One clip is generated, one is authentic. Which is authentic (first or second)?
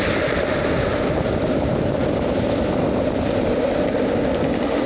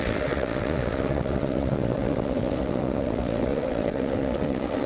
first